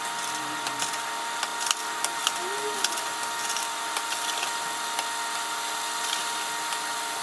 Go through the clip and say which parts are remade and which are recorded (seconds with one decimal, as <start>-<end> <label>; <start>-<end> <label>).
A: 0.0-7.2 recorded